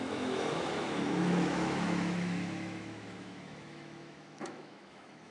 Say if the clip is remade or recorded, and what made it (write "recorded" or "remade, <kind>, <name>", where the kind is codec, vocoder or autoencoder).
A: remade, autoencoder, DAC-VAE